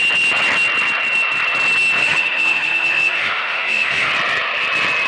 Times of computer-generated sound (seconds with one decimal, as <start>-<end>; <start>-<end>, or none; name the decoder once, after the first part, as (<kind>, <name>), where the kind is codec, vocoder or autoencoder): 2.0-4.1 (autoencoder, DAC-VAE)